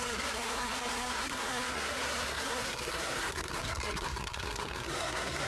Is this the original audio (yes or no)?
no